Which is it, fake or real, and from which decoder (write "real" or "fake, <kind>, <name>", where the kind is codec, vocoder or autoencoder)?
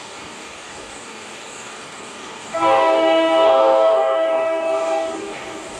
fake, codec, DAC